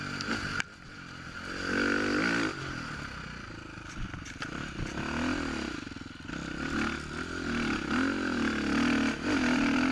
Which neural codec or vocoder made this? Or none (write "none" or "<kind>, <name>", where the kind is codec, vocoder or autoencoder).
none